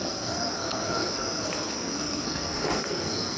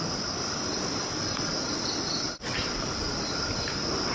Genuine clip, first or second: second